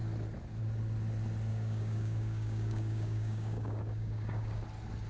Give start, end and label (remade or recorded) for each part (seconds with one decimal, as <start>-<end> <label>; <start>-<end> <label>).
0.0-1.5 recorded; 1.5-4.6 remade; 4.6-5.1 recorded